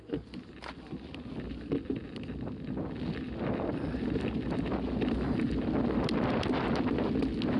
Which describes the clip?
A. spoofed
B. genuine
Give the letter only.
B